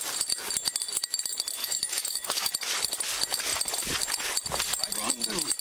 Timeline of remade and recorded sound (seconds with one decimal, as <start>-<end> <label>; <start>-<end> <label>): 0.0-1.6 recorded; 1.6-2.5 remade; 2.5-5.6 recorded